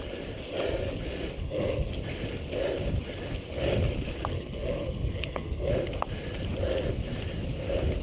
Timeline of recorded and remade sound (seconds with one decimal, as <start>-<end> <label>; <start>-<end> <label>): 0.0-1.4 recorded; 1.4-1.9 remade; 1.9-4.3 recorded; 4.3-5.7 remade; 5.7-8.0 recorded